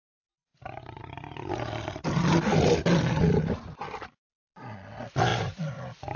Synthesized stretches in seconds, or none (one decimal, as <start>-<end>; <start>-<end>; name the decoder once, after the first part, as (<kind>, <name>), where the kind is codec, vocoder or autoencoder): none